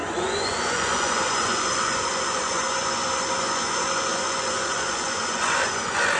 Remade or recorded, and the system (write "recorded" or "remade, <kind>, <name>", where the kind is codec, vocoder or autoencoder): remade, vocoder, Vocos